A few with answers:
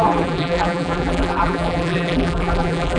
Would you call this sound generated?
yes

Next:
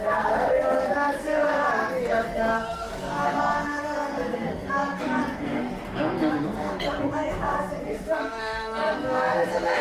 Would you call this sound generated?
yes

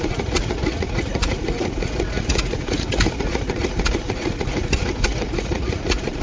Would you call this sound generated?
yes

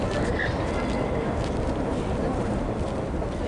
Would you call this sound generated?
yes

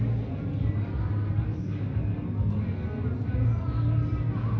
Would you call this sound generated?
no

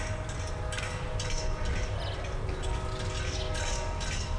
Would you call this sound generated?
no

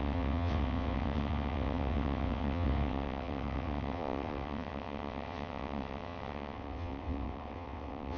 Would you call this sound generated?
yes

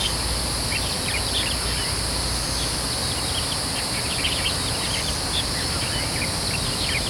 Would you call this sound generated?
no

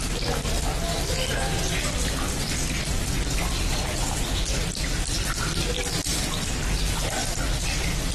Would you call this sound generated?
no